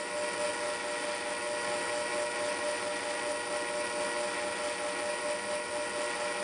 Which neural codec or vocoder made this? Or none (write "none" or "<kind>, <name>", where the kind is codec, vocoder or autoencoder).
none